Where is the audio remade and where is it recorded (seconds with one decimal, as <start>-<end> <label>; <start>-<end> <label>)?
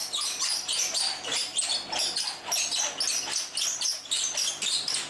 0.0-5.1 recorded